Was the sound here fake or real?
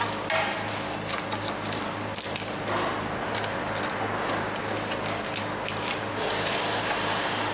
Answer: real